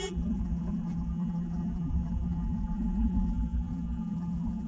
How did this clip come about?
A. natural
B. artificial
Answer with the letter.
B